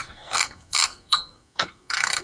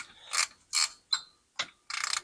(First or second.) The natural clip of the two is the second